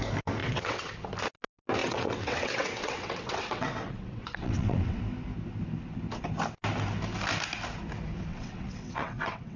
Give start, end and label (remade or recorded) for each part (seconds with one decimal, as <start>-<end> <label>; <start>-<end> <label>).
0.0-0.4 recorded; 0.4-0.9 remade; 0.9-1.8 recorded; 1.8-5.0 remade; 5.0-8.3 recorded; 8.3-9.6 remade